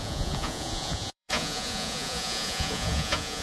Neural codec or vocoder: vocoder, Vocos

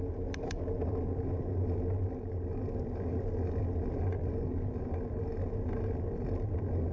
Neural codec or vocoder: none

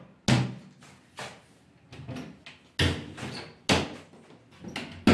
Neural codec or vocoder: none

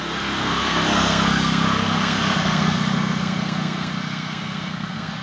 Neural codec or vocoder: codec, SNAC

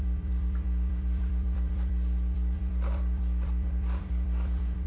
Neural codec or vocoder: vocoder, BigVGAN v2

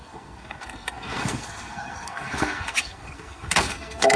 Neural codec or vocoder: codec, SNAC